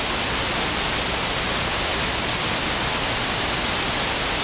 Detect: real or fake real